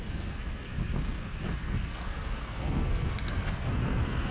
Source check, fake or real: fake